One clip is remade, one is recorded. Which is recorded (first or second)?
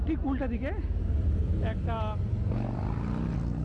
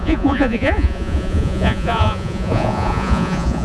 first